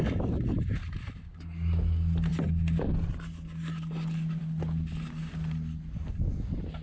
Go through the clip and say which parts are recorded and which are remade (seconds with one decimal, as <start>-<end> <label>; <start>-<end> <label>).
0.0-6.8 recorded